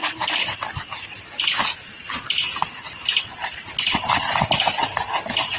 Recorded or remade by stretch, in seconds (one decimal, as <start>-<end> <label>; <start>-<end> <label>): 0.0-5.6 recorded